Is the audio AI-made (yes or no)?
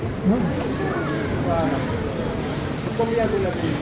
no